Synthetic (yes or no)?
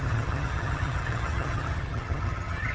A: yes